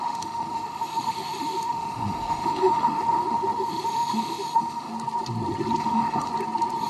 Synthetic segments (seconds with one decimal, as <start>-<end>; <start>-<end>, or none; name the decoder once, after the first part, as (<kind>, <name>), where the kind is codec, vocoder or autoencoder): 0.0-4.9 (autoencoder, DAC-VAE); 5.8-6.3